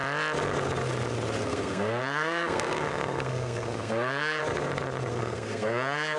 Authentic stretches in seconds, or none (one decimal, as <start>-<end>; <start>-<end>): 0.0-1.4; 4.4-5.1